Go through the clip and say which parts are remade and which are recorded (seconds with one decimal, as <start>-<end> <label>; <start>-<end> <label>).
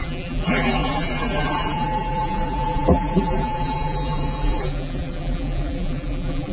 0.0-6.5 remade